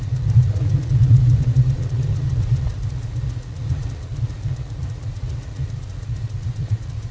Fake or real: fake